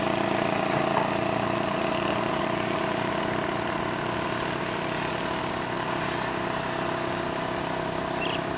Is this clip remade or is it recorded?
recorded